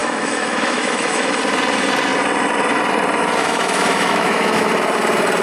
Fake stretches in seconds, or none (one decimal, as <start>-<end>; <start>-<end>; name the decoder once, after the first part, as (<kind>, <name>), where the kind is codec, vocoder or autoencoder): 0.0-1.4 (autoencoder, DAC-VAE); 3.4-4.7